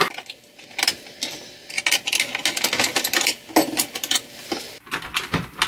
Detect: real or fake real